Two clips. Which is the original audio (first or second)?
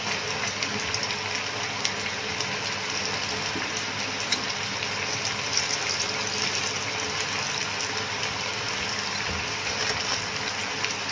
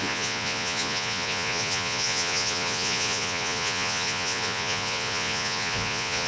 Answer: first